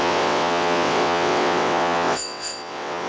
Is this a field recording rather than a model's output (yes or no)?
no